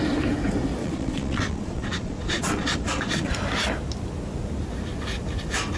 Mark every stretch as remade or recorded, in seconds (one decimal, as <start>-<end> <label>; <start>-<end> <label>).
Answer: 0.0-0.8 recorded; 0.8-3.3 remade; 3.3-5.8 recorded